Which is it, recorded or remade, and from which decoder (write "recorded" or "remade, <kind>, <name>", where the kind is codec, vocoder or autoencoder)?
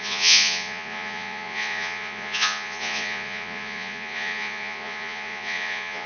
remade, vocoder, Vocos